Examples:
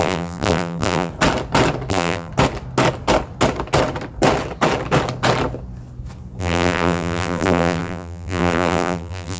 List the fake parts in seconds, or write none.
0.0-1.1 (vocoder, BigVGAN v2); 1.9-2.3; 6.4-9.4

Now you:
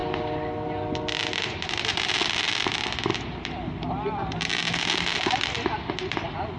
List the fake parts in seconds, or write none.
none

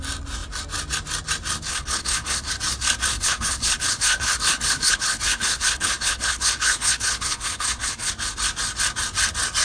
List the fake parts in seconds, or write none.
1.7-2.5 (codec, HILCodec); 3.1-8.1

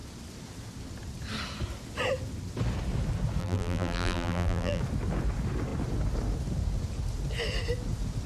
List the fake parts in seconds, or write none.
3.4-4.8 (vocoder, BigVGAN v2)

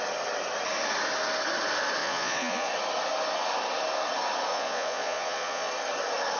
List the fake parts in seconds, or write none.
2.0-2.7 (vocoder, Vocos); 4.5-5.7

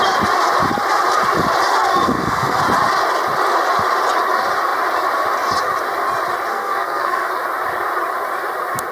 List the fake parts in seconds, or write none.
1.9-2.6 (codec, SNAC); 6.5-7.3

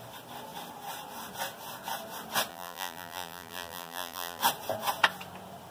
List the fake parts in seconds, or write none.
2.5-4.4 (vocoder, BigVGAN v2)